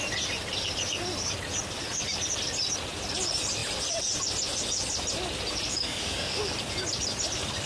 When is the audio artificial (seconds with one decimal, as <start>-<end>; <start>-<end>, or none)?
5.7-6.4

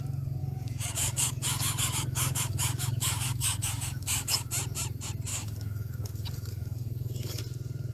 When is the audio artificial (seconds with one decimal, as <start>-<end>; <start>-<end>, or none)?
0.4-4.5; 5.3-7.4

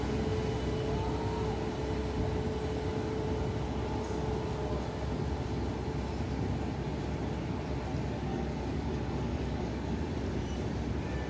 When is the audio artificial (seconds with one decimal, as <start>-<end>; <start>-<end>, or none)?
8.3-9.9

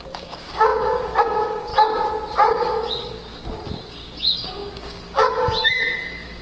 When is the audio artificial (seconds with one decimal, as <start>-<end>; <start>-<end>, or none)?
0.0-1.7; 2.5-3.3; 3.9-6.4

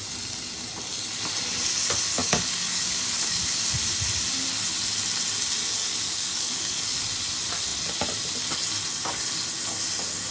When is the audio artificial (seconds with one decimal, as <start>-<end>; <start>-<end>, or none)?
2.2-3.4; 5.8-7.0

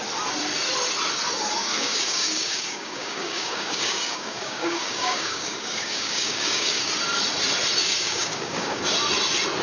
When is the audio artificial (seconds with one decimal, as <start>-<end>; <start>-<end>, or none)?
1.6-6.9; 7.8-8.8

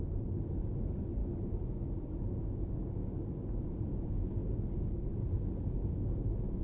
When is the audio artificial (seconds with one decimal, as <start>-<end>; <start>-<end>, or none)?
0.0-6.6